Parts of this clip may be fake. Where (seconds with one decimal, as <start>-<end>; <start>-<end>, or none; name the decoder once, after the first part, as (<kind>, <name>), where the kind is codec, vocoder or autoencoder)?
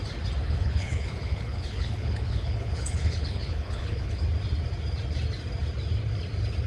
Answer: 0.4-4.2 (codec, HILCodec)